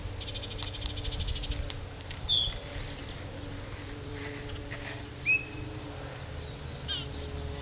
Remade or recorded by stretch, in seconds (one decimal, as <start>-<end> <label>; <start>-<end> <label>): 0.0-7.6 recorded